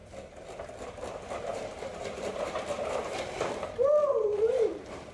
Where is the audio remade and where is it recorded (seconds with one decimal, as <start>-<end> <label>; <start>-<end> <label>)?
0.0-1.5 recorded; 1.5-3.5 remade; 3.5-4.0 recorded; 4.0-5.1 remade